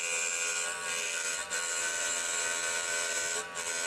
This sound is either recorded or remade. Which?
remade